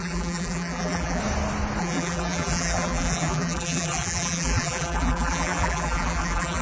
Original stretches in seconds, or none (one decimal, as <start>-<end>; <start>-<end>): 1.2-1.8